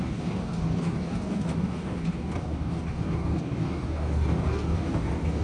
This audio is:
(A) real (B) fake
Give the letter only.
B